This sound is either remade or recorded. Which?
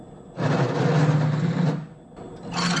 recorded